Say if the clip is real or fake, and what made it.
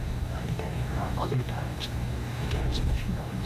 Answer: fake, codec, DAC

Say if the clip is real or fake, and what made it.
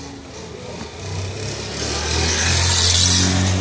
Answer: real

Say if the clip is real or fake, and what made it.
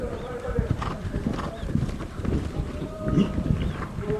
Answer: fake, vocoder, BigVGAN v2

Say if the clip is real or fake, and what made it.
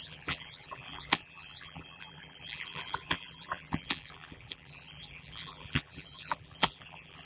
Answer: fake, vocoder, BigVGAN v2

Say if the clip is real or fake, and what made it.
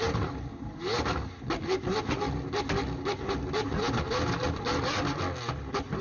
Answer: real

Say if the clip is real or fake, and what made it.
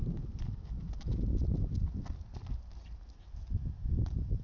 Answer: real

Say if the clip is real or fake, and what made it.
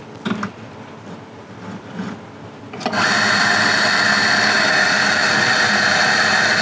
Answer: real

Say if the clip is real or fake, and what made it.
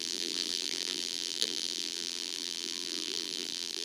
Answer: fake, vocoder, BigVGAN v2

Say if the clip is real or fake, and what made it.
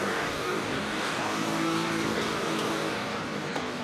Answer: fake, codec, DAC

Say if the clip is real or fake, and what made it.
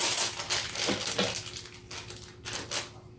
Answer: real